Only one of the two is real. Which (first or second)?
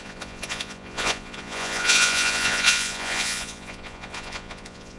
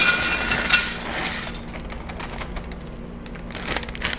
second